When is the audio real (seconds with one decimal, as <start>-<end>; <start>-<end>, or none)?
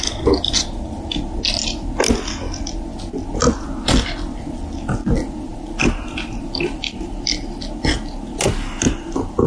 0.0-9.5